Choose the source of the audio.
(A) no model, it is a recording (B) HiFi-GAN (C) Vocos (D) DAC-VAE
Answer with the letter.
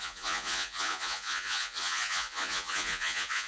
C